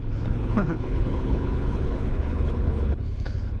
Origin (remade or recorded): remade